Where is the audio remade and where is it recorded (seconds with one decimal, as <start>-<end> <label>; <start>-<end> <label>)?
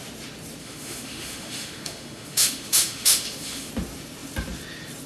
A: 0.0-0.6 recorded; 0.6-3.7 remade; 3.7-5.1 recorded